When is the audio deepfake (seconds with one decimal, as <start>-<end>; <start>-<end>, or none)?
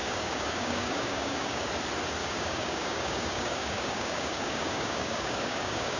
0.0-1.7; 2.2-6.0